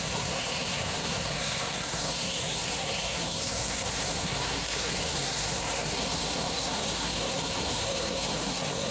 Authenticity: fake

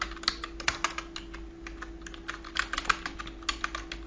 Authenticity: real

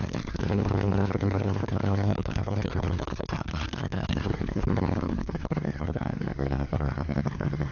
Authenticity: fake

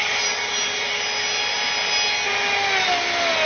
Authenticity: real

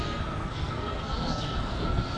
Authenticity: fake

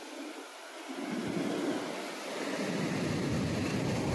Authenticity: real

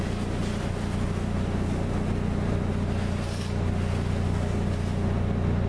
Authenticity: real